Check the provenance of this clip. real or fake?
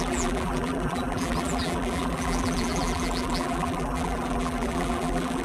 fake